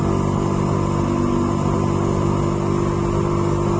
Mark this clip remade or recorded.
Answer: recorded